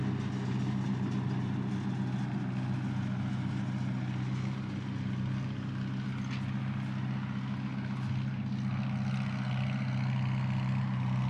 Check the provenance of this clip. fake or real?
real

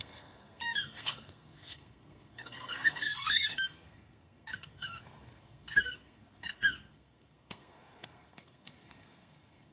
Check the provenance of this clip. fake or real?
fake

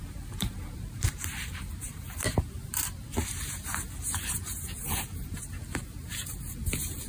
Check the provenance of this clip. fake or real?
fake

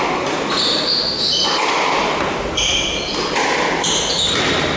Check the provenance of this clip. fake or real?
real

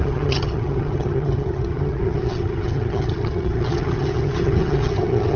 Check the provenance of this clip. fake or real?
fake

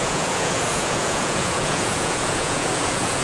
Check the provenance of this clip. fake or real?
fake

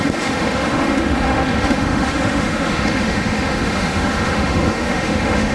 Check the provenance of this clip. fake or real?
fake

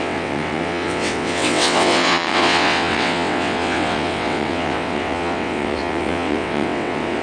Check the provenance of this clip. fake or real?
fake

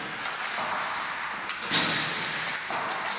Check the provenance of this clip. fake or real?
real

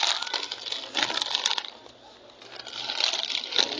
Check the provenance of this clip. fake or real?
real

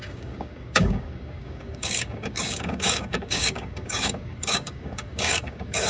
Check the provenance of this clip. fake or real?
fake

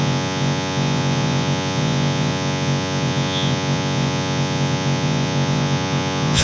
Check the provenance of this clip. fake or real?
fake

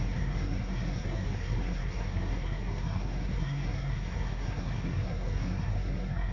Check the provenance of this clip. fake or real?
fake